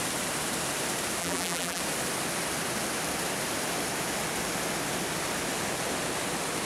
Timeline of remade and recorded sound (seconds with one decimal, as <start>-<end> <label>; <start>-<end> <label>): 0.0-1.2 recorded; 1.2-1.8 remade; 1.8-6.6 recorded